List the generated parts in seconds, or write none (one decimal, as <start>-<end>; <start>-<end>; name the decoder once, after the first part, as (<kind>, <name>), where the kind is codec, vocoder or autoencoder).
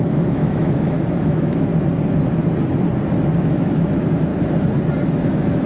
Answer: 0.0-1.7 (autoencoder, DAC-VAE); 3.4-4.3; 5.3-5.7